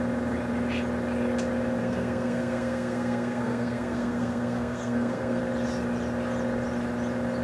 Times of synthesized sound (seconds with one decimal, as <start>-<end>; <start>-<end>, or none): 1.8-5.4